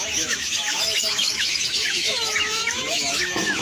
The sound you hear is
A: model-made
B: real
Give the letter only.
A